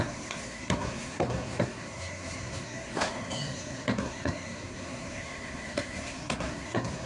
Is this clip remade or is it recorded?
remade